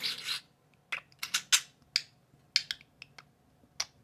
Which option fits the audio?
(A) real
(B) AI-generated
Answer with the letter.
A